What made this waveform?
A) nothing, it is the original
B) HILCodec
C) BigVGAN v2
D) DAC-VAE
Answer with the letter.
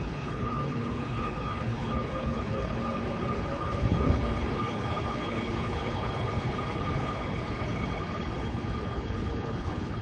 B